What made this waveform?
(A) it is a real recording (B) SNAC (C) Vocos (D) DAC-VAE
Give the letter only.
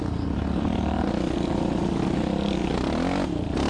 A